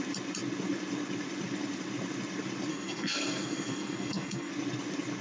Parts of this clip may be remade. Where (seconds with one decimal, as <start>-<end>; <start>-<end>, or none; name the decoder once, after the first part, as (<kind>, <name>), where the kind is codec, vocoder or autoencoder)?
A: 2.7-4.5 (codec, SNAC)